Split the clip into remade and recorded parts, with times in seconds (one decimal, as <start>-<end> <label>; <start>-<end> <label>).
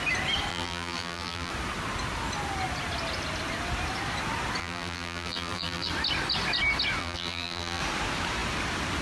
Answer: 0.0-0.5 recorded; 0.5-1.5 remade; 1.5-4.6 recorded; 4.6-5.9 remade; 5.9-7.0 recorded; 7.0-7.8 remade; 7.8-9.0 recorded